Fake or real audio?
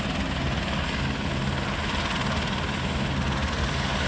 real